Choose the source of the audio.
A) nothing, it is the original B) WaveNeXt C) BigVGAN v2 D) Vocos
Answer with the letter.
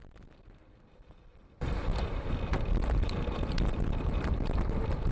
A